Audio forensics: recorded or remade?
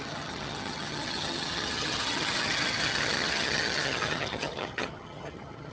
remade